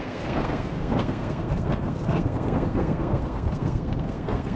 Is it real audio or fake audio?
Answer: fake